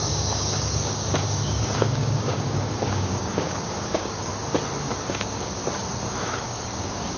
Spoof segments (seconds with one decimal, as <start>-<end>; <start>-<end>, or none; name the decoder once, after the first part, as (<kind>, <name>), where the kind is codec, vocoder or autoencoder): 0.0-4.3 (codec, DAC); 4.8-5.6; 6.2-7.2